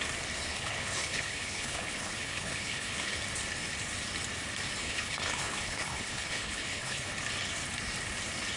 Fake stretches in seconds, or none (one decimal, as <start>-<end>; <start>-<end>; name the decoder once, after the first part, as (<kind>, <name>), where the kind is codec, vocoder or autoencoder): 0.5-3.2 (codec, HILCodec); 4.8-7.1